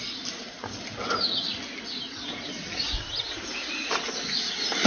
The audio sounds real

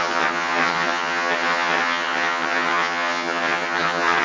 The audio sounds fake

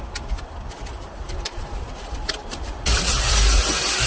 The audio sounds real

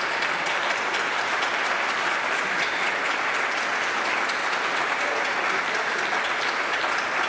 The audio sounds real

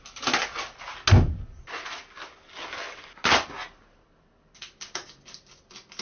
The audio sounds real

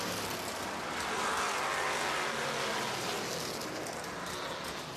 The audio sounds real